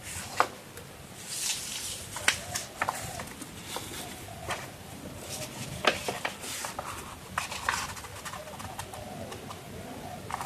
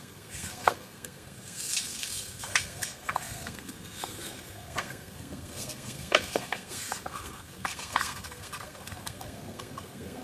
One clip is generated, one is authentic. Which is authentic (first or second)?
first